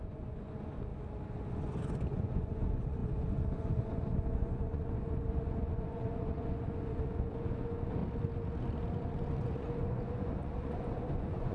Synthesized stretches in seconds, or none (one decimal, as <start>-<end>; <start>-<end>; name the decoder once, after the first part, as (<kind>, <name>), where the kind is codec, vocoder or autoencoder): 0.0-0.9 (vocoder, Vocos); 1.5-8.0; 8.9-11.5